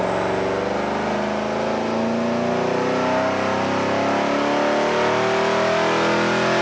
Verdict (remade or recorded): recorded